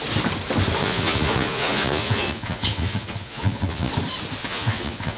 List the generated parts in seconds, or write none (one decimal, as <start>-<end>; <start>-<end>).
0.8-3.9; 4.4-5.2